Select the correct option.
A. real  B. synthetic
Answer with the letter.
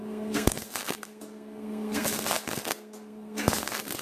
B